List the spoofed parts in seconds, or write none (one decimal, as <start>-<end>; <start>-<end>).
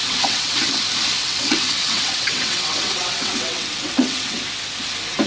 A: 0.0-0.6; 1.2-4.4